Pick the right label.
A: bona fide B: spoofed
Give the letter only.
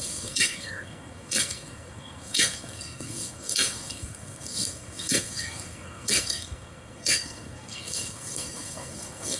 B